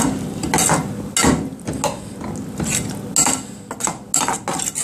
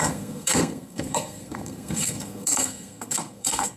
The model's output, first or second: second